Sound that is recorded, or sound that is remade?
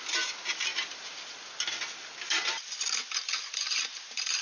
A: recorded